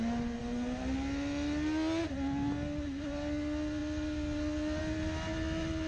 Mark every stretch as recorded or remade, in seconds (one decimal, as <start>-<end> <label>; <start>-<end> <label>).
0.0-5.9 recorded